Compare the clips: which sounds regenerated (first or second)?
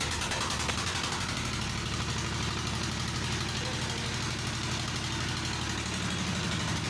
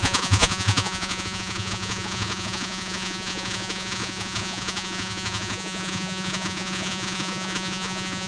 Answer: second